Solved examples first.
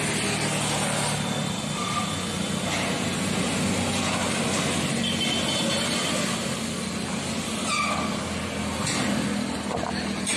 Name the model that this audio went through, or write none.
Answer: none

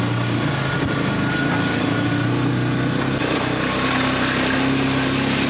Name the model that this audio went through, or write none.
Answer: none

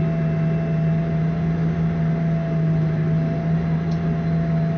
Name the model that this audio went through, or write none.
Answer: none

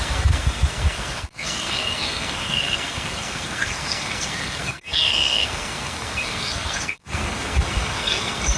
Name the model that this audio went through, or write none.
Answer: codec, SNAC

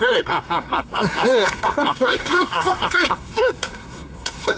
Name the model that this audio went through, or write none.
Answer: codec, SNAC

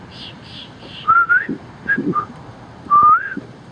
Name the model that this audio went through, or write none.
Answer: vocoder, BigVGAN v2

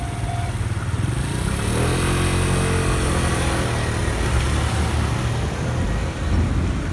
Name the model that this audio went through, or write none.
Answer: none